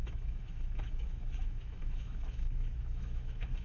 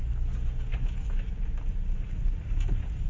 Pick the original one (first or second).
second